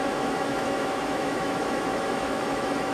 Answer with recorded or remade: remade